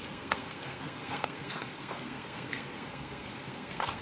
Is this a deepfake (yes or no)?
yes